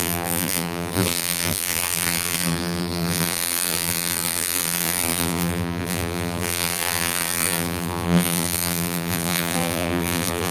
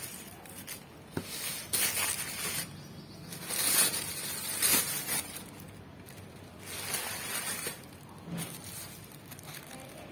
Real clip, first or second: second